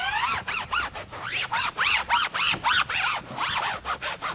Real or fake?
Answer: fake